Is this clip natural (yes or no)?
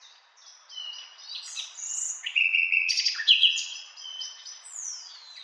no